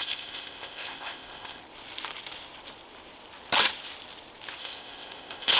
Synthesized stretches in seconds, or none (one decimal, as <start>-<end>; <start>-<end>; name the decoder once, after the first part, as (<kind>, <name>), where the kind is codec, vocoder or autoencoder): 0.0-1.6 (codec, ZipCodec); 4.6-5.6